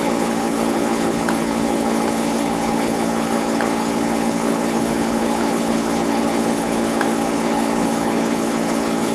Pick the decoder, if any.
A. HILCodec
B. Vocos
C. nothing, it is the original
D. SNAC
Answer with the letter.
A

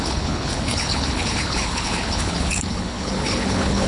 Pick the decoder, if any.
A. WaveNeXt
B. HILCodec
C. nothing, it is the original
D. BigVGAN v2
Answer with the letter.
B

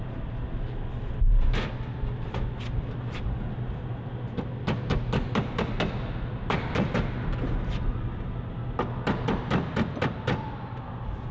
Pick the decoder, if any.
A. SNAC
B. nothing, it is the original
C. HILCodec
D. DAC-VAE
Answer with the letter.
B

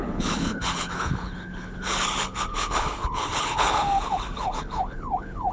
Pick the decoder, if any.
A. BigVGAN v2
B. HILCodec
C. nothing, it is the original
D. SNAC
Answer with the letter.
B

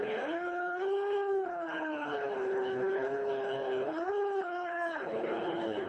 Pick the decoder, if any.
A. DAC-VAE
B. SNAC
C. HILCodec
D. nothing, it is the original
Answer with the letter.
C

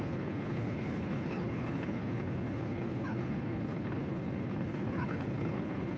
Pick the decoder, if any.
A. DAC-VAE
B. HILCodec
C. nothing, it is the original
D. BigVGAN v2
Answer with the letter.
B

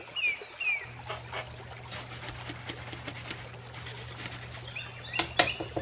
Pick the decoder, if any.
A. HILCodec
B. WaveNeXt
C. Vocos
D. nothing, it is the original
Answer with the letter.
D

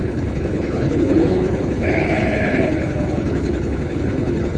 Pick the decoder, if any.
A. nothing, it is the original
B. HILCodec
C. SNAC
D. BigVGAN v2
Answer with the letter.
B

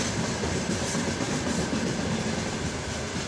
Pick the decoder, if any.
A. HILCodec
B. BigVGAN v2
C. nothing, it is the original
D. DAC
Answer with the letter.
C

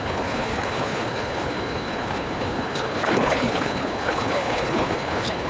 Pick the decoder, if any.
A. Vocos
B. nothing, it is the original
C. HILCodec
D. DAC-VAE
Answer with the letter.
C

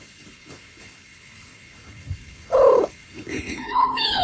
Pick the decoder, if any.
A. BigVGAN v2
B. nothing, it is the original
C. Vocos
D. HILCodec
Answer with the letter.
D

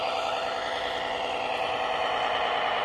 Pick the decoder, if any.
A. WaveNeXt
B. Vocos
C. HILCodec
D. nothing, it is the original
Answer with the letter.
D